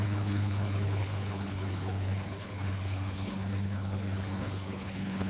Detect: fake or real fake